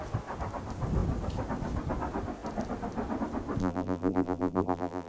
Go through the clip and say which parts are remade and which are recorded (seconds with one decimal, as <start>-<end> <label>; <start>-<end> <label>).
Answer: 0.0-3.6 recorded; 3.6-5.1 remade